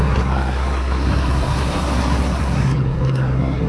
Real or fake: fake